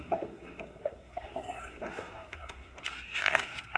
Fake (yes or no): yes